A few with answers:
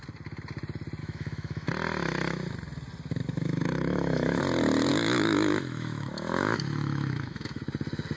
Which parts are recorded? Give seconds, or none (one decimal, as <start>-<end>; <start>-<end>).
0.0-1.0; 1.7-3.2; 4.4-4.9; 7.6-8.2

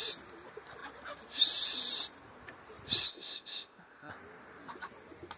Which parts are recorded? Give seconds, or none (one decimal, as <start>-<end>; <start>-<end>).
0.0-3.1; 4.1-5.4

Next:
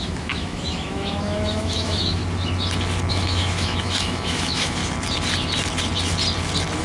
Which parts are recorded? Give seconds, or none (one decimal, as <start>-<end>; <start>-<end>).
2.2-3.1; 4.8-6.8

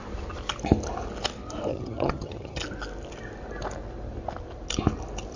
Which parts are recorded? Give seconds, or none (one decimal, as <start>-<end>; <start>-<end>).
0.0-1.7; 2.6-5.4

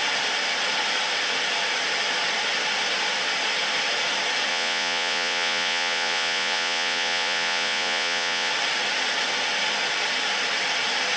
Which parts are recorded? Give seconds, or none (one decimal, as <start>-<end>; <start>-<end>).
0.0-4.5; 8.5-11.2

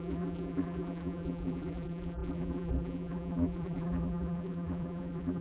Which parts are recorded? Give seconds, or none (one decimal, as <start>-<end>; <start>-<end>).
none

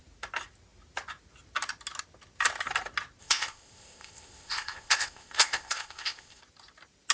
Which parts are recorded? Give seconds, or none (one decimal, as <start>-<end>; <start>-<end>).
0.0-3.2; 6.4-7.1

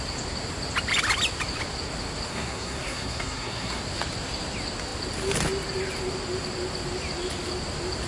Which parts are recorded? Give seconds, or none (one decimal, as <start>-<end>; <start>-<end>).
0.0-2.3; 3.8-8.1